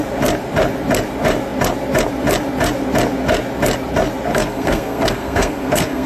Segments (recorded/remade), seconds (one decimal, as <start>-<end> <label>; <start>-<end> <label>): 0.0-4.3 recorded; 4.3-6.1 remade